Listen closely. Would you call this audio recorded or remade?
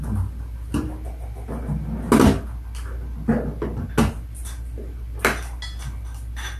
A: recorded